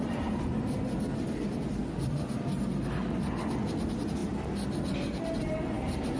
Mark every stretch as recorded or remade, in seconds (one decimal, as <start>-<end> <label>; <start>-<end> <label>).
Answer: 0.0-6.2 recorded